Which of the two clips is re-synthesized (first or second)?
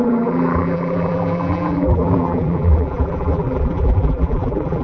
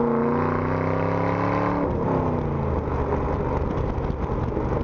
first